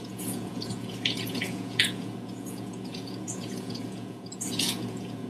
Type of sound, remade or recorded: remade